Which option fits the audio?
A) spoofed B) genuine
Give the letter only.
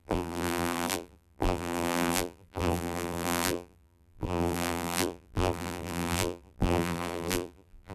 A